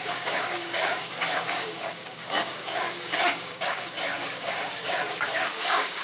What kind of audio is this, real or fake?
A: fake